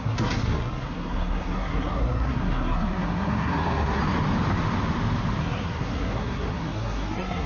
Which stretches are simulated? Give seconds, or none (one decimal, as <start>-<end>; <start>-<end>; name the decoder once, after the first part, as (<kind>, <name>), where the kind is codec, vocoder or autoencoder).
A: 0.0-4.0 (codec, SNAC); 5.4-7.5